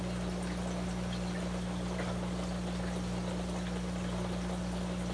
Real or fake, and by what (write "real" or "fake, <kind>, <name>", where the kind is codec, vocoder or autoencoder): real